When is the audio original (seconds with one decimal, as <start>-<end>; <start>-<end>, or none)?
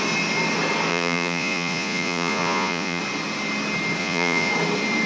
0.0-0.9; 3.0-4.0; 4.5-5.1